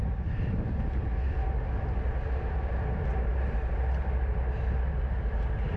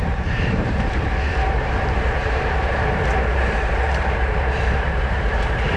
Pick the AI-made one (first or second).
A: second